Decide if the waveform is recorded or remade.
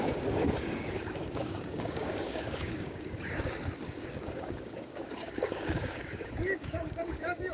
remade